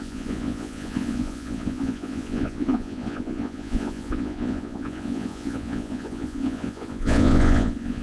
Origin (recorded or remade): remade